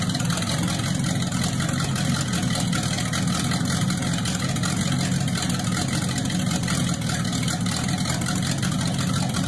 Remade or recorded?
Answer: recorded